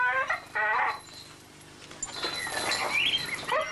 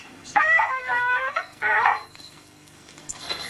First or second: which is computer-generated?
second